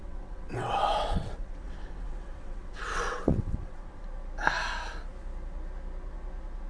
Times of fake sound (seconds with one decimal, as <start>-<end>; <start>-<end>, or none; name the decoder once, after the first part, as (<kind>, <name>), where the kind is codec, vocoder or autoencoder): 0.0-4.0 (vocoder, WaveNeXt)

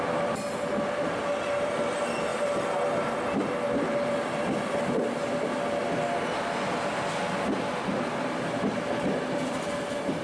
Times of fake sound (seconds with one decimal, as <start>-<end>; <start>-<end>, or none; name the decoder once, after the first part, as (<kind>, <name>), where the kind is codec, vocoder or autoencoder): none